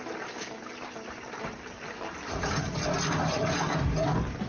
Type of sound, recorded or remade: recorded